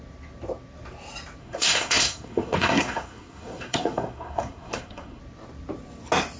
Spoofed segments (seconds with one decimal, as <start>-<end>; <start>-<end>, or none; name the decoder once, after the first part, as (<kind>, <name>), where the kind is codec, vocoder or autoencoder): 1.4-5.2 (codec, SNAC)